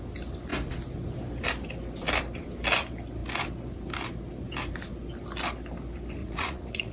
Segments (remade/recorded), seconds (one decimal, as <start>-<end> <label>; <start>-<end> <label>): 0.0-6.2 recorded; 6.2-6.9 remade